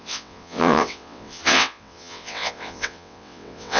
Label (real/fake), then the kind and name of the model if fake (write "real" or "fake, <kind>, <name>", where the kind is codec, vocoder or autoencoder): fake, vocoder, WaveNeXt